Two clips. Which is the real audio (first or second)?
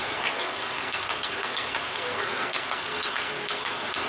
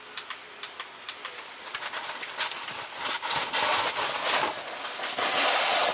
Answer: second